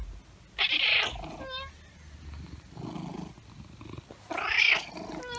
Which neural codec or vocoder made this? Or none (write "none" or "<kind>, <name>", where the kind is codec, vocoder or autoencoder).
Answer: none